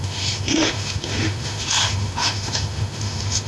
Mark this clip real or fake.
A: fake